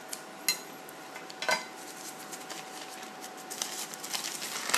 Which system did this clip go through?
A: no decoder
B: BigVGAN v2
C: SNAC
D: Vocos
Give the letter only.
A